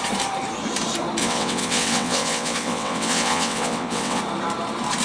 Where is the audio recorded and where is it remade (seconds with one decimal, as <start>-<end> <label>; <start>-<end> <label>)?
0.0-1.2 recorded; 1.2-4.2 remade; 4.2-5.0 recorded